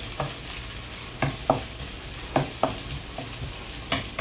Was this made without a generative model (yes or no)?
yes